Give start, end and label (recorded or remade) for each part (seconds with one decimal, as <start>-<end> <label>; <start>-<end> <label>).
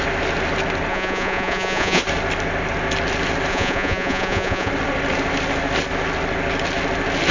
0.0-0.9 recorded; 0.9-2.0 remade; 2.0-3.5 recorded; 3.5-4.7 remade; 4.7-7.3 recorded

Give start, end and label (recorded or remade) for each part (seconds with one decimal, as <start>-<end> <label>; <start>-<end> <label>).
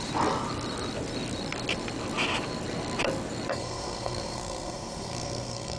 0.0-3.5 recorded; 3.5-5.8 remade